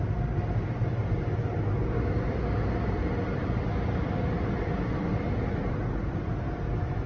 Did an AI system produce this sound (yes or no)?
no